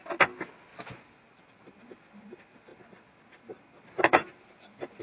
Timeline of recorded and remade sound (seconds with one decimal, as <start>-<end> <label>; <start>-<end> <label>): 0.0-5.0 recorded